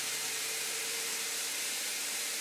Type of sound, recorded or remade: remade